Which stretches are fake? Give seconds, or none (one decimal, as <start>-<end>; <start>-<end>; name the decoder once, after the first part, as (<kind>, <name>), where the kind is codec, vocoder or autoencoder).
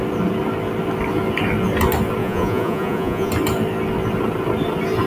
2.2-3.3 (vocoder, Vocos)